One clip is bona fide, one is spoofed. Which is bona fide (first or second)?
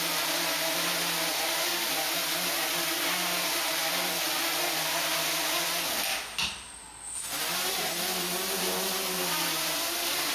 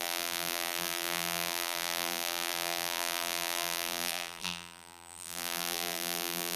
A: first